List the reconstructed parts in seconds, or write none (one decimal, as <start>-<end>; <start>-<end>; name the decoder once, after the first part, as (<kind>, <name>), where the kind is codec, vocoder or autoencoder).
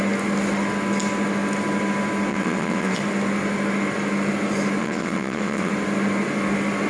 2.3-3.0 (vocoder, WaveNeXt); 4.8-5.7